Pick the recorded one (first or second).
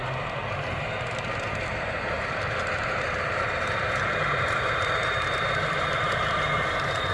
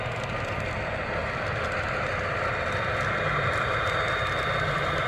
second